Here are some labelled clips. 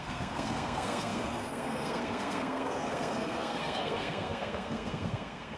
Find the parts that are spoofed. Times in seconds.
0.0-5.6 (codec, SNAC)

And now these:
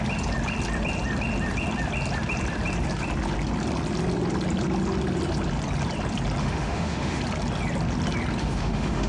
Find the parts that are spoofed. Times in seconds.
6.4-7.2 (autoencoder, DAC-VAE); 8.4-9.1

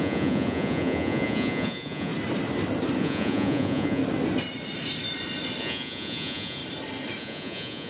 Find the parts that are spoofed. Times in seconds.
0.0-2.1 (vocoder, Vocos); 3.0-4.0; 5.6-6.6; 7.2-7.9

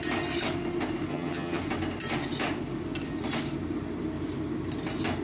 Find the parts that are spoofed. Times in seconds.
1.1-1.6 (vocoder, HiFi-GAN)